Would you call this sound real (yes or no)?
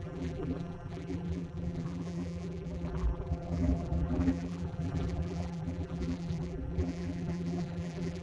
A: no